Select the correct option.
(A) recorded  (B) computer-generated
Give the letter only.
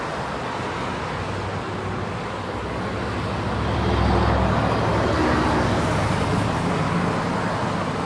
A